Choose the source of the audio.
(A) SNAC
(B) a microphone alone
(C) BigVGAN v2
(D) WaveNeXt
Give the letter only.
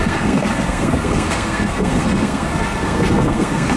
A